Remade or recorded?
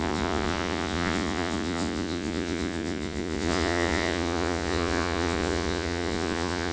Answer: remade